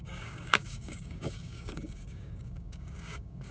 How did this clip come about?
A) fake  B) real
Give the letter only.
A